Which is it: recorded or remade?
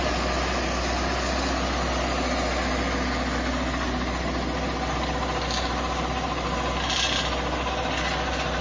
recorded